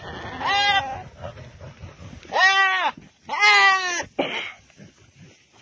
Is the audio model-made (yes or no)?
no